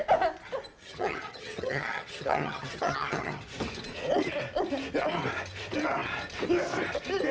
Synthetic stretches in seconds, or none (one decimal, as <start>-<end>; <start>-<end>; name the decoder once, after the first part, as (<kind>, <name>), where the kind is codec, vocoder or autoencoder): 0.8-3.4 (vocoder, HiFi-GAN)